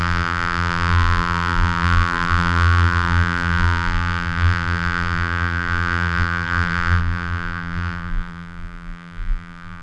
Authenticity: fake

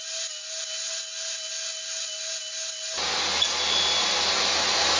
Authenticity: real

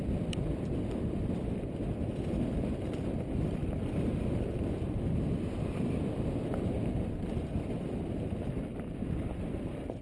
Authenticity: fake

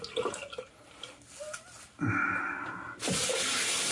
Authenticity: real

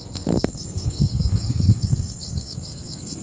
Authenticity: fake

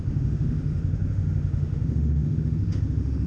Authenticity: fake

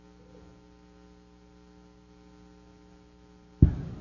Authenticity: real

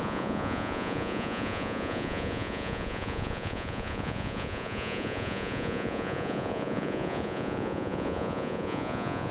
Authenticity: fake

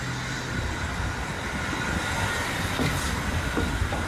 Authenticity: real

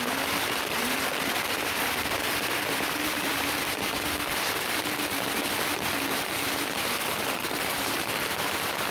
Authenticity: fake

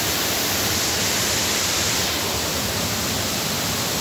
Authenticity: fake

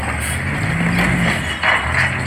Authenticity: real